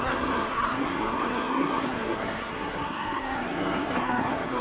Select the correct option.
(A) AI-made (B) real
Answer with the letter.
A